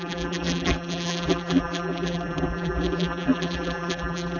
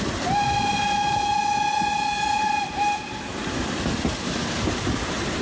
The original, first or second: second